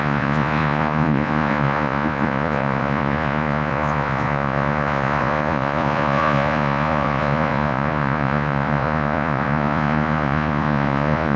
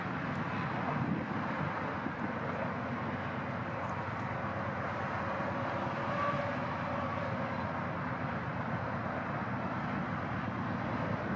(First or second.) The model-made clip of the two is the first